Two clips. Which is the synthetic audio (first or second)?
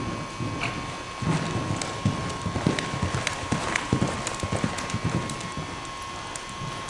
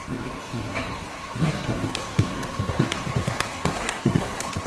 second